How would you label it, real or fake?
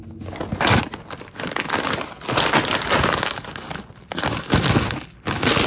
real